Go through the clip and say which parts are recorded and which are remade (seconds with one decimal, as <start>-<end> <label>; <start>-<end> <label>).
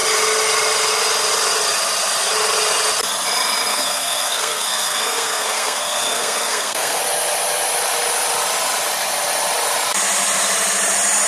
0.0-3.7 recorded; 3.7-7.0 remade; 7.0-11.3 recorded